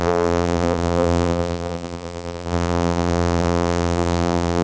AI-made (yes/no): yes